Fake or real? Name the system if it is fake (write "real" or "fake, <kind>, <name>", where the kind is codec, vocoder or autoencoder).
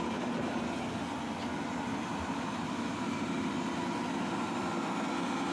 real